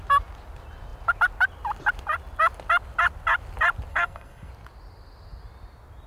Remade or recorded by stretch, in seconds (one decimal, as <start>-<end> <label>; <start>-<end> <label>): 0.0-3.9 recorded; 3.9-4.5 remade; 4.5-6.1 recorded